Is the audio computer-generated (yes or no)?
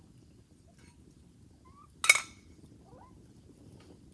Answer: no